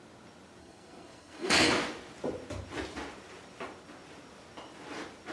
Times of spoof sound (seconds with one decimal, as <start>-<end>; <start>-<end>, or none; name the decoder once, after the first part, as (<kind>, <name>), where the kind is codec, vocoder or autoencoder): 0.6-1.7 (codec, SNAC)